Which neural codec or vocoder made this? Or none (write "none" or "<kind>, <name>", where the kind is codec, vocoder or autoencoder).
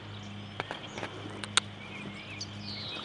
none